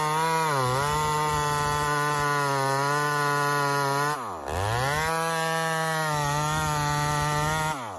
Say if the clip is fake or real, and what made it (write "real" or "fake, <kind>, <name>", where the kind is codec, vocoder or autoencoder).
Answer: real